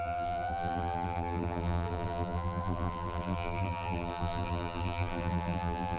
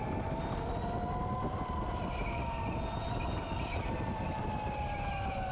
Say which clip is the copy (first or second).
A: first